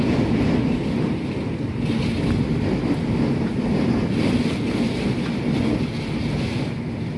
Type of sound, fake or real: real